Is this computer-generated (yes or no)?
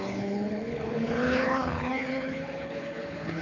yes